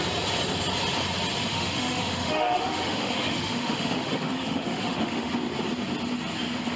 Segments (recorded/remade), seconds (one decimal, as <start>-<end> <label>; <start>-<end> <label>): 0.0-1.5 recorded; 1.5-5.3 remade; 5.3-6.8 recorded